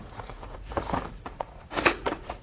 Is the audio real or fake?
fake